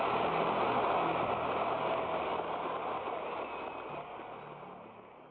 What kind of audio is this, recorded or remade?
recorded